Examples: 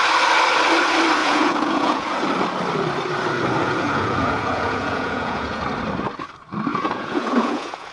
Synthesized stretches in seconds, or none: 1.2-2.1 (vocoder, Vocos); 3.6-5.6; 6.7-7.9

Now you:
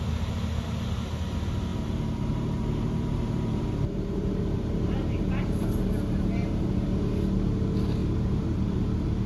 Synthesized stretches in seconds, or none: 1.7-6.7 (vocoder, BigVGAN v2); 8.0-9.3

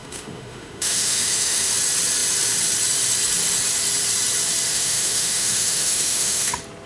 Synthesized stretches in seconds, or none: 0.0-1.7 (autoencoder, DAC-VAE); 4.7-6.5

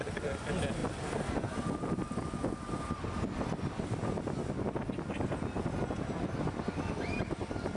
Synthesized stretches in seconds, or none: none

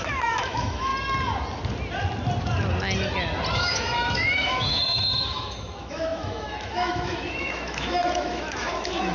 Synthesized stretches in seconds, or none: 0.0-0.9 (autoencoder, DAC-VAE); 3.5-9.1

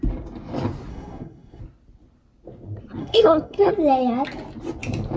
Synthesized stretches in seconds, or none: 0.9-1.6 (codec, SNAC); 3.0-3.7

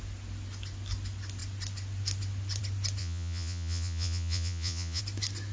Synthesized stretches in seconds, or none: 3.0-5.0 (vocoder, Vocos)

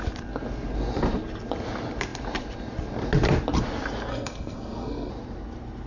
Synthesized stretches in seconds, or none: 4.1-5.1 (codec, SNAC)